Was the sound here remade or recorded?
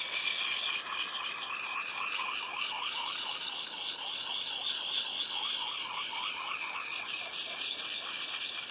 recorded